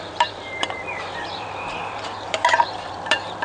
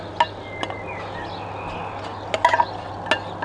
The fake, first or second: first